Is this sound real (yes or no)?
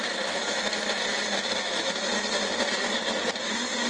yes